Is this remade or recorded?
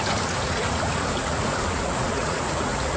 remade